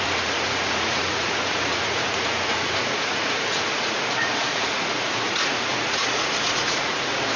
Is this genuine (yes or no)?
no